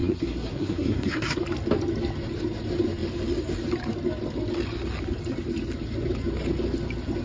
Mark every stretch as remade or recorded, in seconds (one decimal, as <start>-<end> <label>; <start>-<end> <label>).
0.0-1.4 remade; 1.4-7.2 recorded